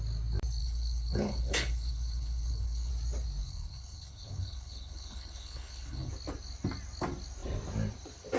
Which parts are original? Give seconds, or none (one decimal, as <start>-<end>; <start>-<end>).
0.0-0.6; 2.9-3.4; 6.1-8.4